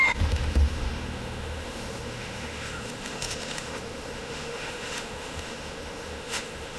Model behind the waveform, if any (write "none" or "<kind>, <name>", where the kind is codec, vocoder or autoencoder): autoencoder, DAC-VAE